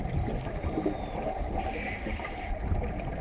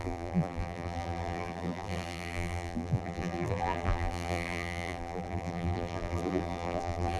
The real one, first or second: first